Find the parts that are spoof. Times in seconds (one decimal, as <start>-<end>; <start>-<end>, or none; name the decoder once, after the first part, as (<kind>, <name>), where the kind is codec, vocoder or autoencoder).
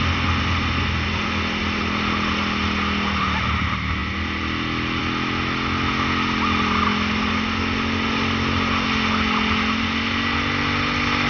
none